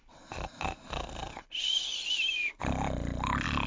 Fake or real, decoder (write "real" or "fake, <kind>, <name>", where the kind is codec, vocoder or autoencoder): real